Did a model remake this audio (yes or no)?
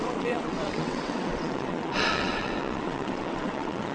yes